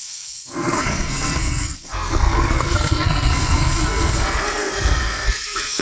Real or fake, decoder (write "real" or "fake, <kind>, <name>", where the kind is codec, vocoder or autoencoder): fake, codec, SNAC